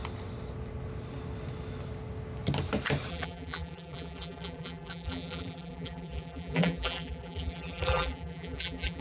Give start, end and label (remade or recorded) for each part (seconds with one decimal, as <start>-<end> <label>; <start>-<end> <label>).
0.0-3.1 recorded; 3.1-9.0 remade